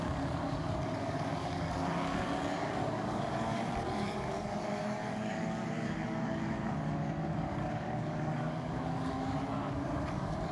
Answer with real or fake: fake